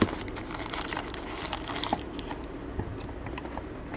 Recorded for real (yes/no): yes